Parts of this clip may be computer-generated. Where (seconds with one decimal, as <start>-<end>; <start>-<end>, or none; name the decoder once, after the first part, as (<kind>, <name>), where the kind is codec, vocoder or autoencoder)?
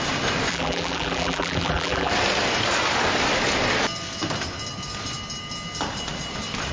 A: 0.5-2.1 (vocoder, BigVGAN v2)